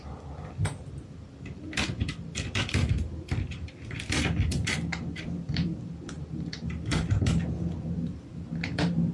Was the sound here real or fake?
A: fake